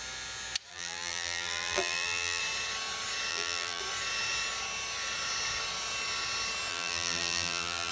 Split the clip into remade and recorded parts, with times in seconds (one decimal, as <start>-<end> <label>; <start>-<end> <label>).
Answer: 0.0-0.7 recorded; 0.7-2.4 remade; 2.4-3.3 recorded; 3.3-3.8 remade; 3.8-6.7 recorded; 6.7-7.9 remade